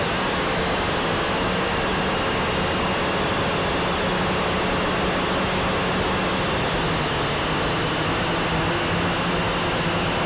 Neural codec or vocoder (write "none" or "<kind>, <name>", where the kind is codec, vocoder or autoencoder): none